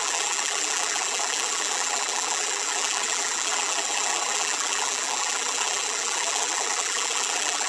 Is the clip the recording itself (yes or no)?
no